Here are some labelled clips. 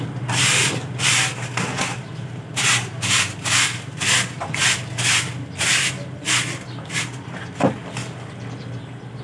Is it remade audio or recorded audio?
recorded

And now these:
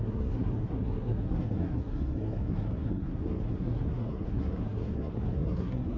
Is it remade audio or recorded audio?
remade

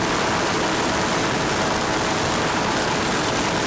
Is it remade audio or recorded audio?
recorded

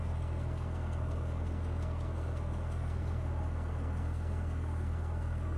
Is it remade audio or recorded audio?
remade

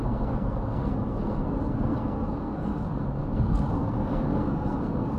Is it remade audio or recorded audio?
remade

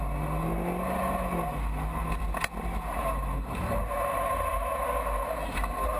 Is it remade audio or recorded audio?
recorded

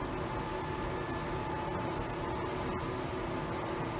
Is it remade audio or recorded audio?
recorded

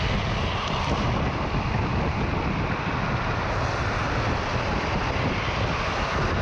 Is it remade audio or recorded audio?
recorded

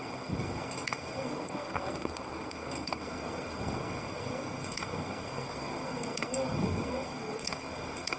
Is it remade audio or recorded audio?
remade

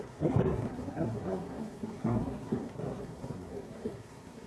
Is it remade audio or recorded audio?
remade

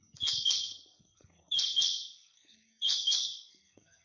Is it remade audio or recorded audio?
remade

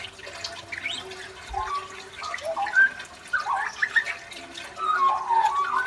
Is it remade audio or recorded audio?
recorded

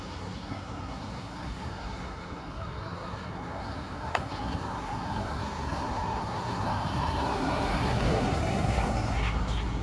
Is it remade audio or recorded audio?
remade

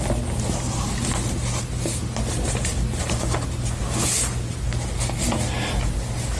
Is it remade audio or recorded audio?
recorded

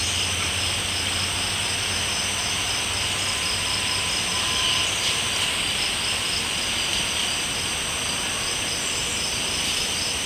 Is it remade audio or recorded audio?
recorded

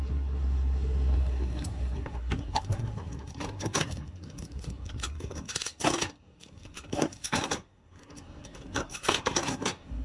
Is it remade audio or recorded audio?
remade